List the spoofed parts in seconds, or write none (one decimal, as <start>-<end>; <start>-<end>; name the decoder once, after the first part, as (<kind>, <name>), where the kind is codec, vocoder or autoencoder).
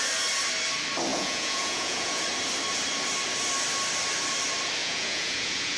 1.1-2.2 (vocoder, Vocos); 4.8-5.8